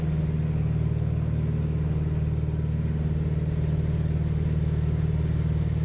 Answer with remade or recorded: recorded